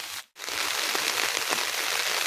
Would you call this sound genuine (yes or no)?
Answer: yes